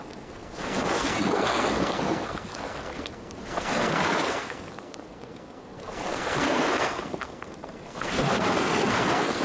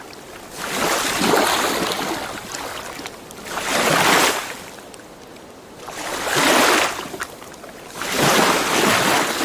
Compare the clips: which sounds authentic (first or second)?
second